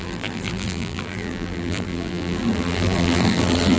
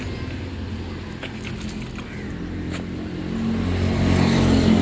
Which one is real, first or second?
second